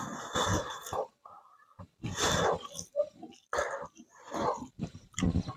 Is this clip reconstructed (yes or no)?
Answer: yes